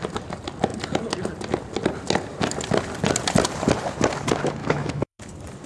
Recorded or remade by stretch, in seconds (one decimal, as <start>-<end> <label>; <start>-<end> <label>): 0.0-4.6 recorded; 4.6-5.2 remade; 5.2-5.7 recorded

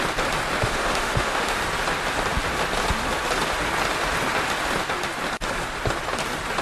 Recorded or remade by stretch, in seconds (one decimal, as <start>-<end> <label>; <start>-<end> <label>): 0.0-0.6 recorded; 0.6-1.6 remade; 1.6-6.6 recorded

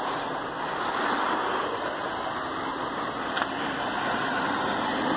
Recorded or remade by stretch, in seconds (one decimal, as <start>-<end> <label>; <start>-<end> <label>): 0.0-5.2 recorded

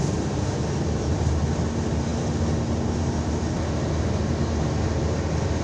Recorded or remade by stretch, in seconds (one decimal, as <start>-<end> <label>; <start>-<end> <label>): 0.0-5.6 recorded

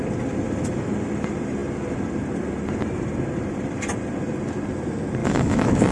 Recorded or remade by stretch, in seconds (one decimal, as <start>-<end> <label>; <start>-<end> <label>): 0.0-5.2 recorded; 5.2-5.9 remade

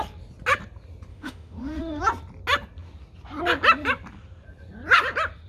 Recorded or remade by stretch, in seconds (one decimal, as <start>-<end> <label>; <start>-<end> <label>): 0.0-1.1 recorded; 1.1-2.0 remade; 2.0-5.5 recorded

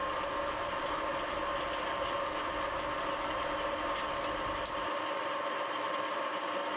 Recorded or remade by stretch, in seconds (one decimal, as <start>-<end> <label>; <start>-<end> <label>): 0.0-6.8 recorded

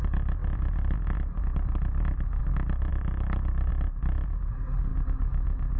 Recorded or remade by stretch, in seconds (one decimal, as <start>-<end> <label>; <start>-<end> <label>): 0.0-2.9 recorded; 2.9-3.7 remade; 3.7-5.8 recorded